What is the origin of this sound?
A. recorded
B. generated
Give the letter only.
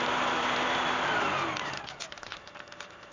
A